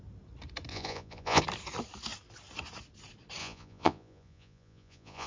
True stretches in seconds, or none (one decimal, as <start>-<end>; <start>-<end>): 0.0-0.7; 1.4-3.4